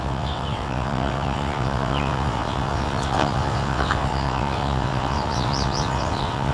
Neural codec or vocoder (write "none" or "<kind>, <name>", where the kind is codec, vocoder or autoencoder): vocoder, WaveNeXt